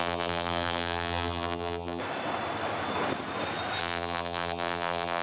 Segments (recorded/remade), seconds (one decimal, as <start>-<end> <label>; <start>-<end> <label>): 0.0-2.0 remade; 2.0-3.8 recorded; 3.8-5.2 remade